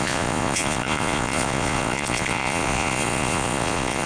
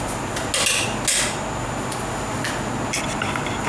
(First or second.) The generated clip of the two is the first